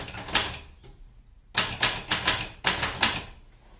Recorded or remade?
recorded